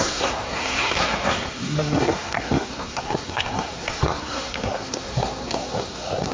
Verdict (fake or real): fake